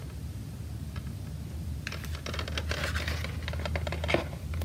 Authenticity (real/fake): real